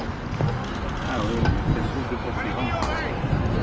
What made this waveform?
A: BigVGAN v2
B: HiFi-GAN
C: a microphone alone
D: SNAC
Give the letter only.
C